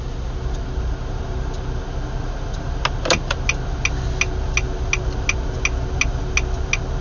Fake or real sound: real